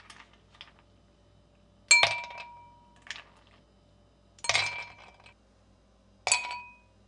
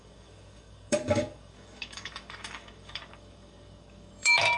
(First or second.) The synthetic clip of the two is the second